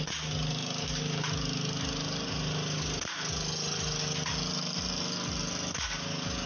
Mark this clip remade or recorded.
recorded